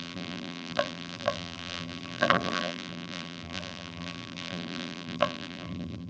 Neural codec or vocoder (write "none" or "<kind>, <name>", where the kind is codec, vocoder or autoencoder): vocoder, BigVGAN v2